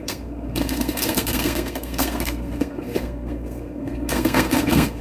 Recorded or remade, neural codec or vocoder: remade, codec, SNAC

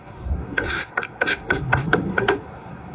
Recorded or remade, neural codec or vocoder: remade, codec, SNAC